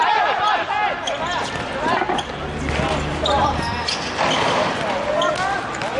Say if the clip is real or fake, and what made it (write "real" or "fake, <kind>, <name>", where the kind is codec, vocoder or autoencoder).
real